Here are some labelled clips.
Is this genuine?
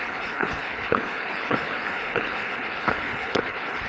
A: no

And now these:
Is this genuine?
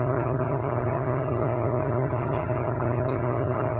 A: no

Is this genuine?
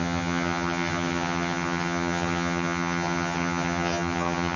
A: no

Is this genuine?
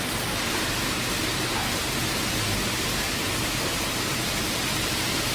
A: yes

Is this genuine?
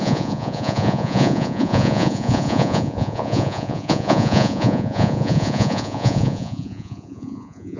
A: no